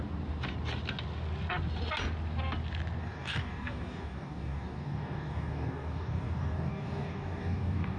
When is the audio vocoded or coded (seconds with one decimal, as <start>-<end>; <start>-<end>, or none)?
3.0-8.0